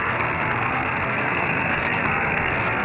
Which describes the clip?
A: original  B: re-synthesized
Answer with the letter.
B